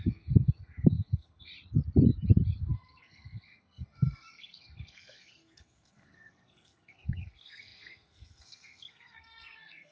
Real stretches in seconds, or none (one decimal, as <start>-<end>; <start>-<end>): 1.5-2.6